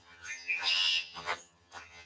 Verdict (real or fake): fake